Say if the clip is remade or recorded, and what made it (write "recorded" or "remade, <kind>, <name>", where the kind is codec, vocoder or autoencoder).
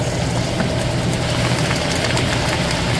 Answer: recorded